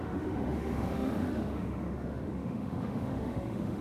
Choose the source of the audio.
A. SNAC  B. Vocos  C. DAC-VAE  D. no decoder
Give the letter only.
C